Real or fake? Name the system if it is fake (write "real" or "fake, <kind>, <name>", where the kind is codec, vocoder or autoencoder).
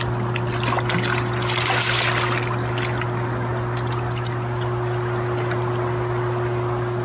real